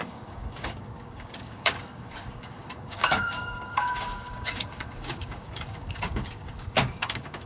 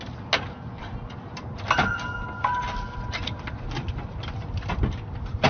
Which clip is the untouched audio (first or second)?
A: second